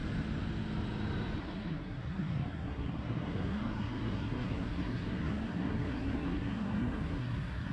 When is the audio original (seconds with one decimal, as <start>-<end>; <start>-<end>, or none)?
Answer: 0.0-1.4